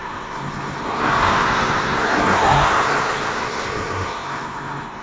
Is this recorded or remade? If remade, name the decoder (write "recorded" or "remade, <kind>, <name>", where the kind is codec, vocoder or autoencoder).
remade, codec, SNAC